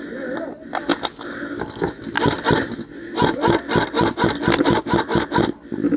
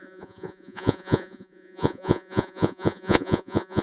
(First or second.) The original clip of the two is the first